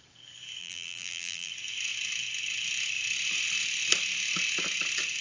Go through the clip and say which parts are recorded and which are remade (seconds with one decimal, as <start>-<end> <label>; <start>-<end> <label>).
0.0-0.6 recorded; 0.6-1.5 remade; 1.5-5.2 recorded